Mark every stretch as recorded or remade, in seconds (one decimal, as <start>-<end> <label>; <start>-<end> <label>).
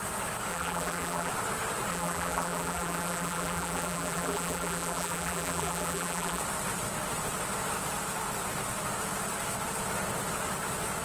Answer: 0.0-0.5 recorded; 0.5-1.3 remade; 1.3-1.9 recorded; 1.9-6.4 remade; 6.4-11.0 recorded